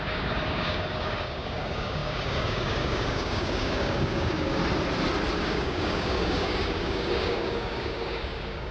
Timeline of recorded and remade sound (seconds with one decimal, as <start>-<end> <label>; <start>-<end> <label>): 0.0-4.6 remade; 4.6-5.4 recorded; 5.4-8.7 remade